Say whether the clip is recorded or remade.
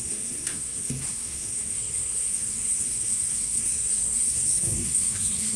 remade